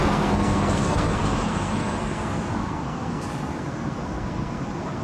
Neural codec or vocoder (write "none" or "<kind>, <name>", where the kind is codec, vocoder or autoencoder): codec, SNAC